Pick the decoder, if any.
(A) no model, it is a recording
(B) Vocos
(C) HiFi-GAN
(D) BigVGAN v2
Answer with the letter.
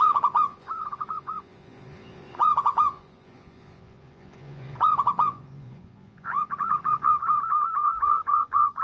B